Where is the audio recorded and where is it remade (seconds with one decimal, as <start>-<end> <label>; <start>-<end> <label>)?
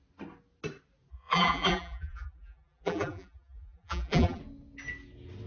0.0-1.1 recorded; 1.1-4.4 remade; 4.4-5.5 recorded